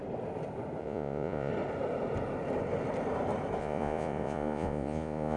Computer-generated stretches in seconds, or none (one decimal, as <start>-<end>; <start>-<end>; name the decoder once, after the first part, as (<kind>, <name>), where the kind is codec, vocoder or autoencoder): 0.8-1.5 (vocoder, Vocos); 3.6-5.4